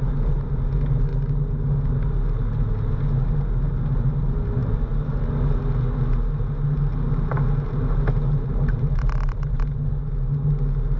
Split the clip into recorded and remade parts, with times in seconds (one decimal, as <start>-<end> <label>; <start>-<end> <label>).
0.0-11.0 recorded